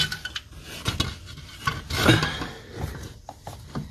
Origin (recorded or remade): recorded